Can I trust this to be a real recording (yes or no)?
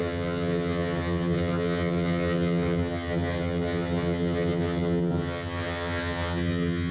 no